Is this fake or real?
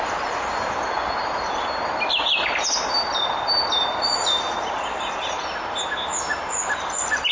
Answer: real